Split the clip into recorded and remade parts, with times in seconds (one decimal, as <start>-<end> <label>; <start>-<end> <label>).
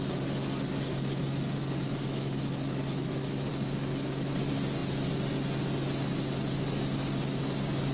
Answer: 0.0-1.9 recorded; 1.9-3.5 remade; 3.5-7.9 recorded